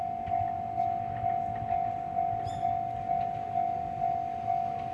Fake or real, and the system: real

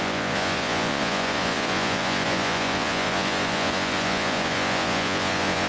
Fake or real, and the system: fake, vocoder, Vocos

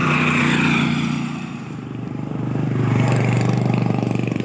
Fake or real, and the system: fake, vocoder, BigVGAN v2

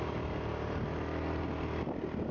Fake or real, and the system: real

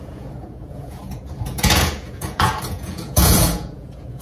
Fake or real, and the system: fake, vocoder, Vocos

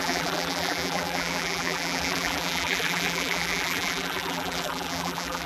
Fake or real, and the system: fake, vocoder, BigVGAN v2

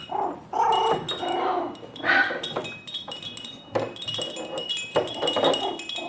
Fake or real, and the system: real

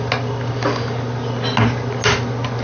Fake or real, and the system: real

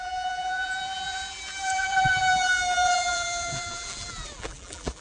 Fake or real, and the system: fake, vocoder, BigVGAN v2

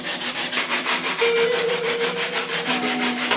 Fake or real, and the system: fake, vocoder, BigVGAN v2